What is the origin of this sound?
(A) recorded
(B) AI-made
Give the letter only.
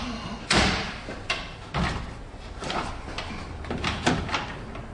A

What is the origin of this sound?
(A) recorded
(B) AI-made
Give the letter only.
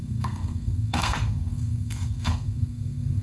B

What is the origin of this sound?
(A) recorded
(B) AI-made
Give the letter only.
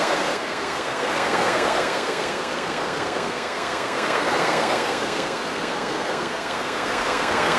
B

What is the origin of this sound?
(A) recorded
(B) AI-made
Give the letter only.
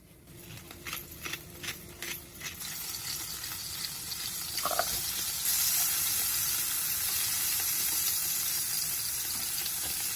A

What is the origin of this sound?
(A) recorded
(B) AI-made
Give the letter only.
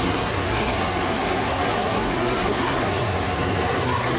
B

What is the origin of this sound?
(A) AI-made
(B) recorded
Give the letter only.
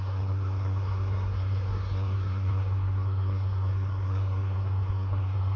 A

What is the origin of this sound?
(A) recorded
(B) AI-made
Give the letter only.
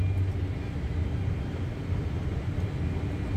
A